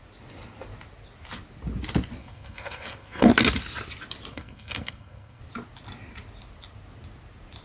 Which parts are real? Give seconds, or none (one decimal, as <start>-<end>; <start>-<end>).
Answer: 0.0-2.2; 3.3-4.3; 5.4-7.6